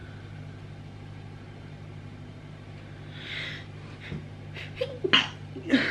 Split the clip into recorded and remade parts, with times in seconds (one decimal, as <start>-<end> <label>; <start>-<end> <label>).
0.0-5.9 recorded